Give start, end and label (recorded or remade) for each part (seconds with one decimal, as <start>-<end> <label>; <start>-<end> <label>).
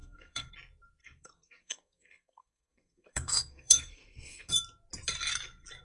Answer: 0.0-0.5 remade; 0.5-1.0 recorded; 1.0-4.5 remade; 4.5-5.8 recorded